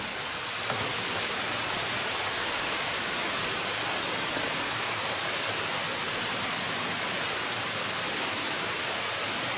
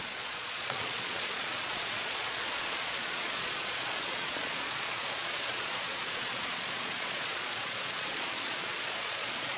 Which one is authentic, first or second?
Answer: first